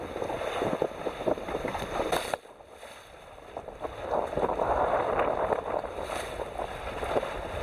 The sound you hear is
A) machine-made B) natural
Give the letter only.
B